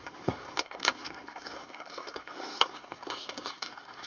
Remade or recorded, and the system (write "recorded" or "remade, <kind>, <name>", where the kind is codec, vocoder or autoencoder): remade, codec, SNAC